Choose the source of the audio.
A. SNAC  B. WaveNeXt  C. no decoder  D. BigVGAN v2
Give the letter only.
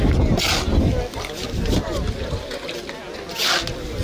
C